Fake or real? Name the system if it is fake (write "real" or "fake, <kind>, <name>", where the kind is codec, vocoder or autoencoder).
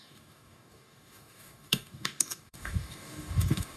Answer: fake, codec, DAC